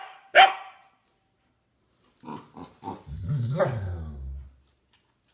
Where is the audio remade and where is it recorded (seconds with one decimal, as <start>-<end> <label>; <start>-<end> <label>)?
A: 0.0-5.3 recorded